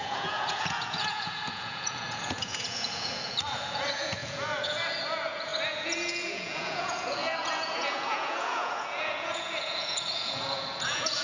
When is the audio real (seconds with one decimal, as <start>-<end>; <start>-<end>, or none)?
none

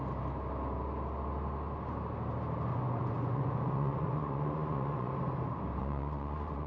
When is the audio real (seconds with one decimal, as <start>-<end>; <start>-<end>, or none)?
0.0-2.7; 5.1-5.8

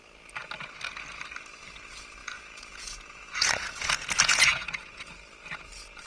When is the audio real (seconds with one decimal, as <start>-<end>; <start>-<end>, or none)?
0.0-2.2; 5.1-6.1

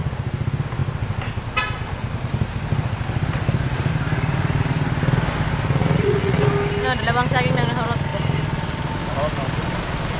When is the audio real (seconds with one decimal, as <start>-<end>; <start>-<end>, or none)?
0.0-5.8; 6.5-10.2

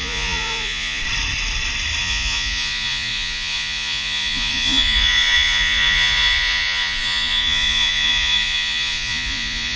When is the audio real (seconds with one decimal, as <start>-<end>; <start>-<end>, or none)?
1.0-2.0